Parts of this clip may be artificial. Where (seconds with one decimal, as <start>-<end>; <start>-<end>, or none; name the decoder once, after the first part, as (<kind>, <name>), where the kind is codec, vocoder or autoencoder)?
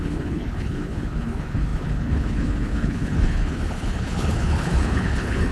0.0-5.5 (codec, HILCodec)